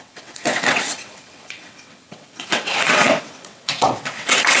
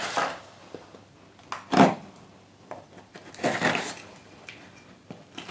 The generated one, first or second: first